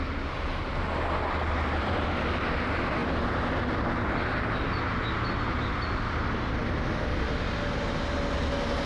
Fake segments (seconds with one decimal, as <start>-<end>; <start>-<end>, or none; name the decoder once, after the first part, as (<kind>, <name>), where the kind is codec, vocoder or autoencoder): none